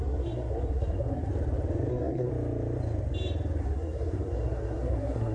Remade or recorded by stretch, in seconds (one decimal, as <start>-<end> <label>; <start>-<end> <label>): 0.0-1.3 remade; 1.3-1.9 recorded; 1.9-2.3 remade; 2.3-3.6 recorded; 3.6-5.3 remade